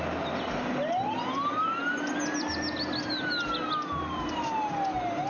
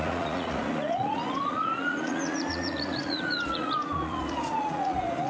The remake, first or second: second